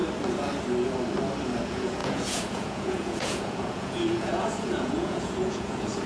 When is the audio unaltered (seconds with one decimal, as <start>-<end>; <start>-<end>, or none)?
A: 0.0-1.6